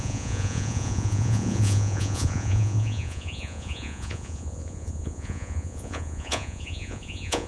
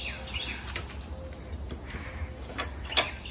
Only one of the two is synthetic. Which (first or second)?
first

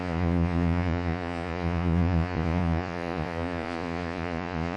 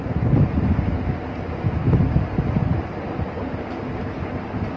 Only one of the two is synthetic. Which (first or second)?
first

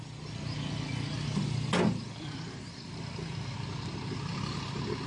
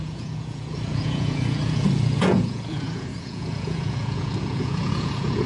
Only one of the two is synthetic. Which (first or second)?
second